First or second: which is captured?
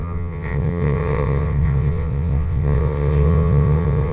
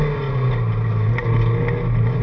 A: second